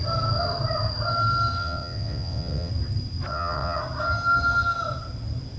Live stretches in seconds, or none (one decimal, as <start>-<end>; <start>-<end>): 0.0-1.6; 2.7-3.3; 3.8-5.6